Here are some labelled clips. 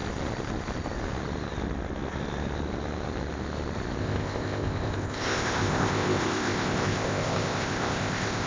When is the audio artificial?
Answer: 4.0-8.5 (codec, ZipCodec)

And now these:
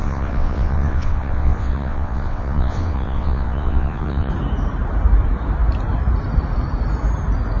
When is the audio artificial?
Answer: 0.0-4.3 (vocoder, WaveNeXt)

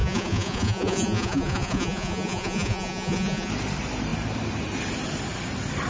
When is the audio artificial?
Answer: 0.0-3.5 (vocoder, Vocos)

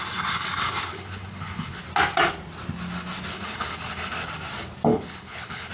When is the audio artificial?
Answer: 0.9-1.8 (codec, HILCodec); 3.3-4.3; 4.9-5.7

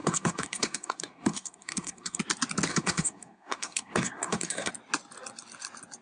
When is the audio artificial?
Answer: 0.0-2.2 (codec, SNAC); 2.7-4.7

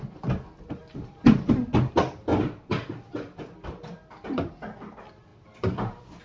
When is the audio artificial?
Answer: 0.8-1.9 (vocoder, BigVGAN v2); 2.3-4.0; 5.3-6.2

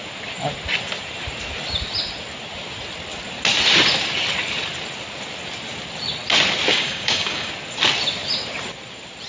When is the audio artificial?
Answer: 6.7-7.5 (codec, DAC)

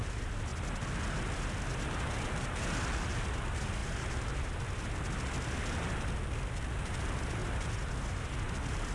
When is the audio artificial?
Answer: 7.4-8.2 (vocoder, BigVGAN v2)